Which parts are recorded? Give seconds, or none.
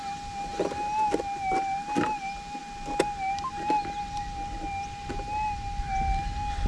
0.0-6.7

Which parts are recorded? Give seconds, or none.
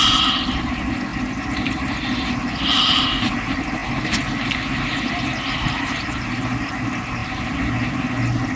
0.0-8.6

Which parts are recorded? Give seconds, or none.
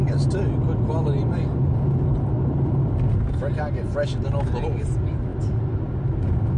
0.0-6.6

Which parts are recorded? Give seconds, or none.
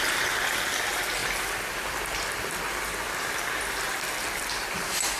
0.0-5.2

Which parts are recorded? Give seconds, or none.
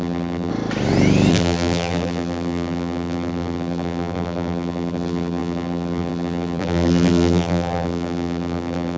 0.5-1.3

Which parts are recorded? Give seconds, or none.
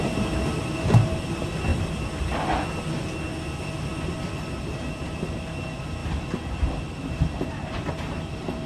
0.0-1.7; 2.2-6.0; 7.9-8.7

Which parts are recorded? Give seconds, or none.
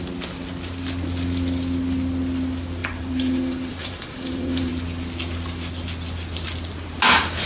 0.0-2.8; 4.7-7.5